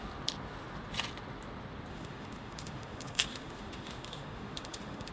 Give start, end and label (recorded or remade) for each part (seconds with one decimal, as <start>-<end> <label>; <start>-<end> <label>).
0.0-1.9 recorded; 1.9-5.1 remade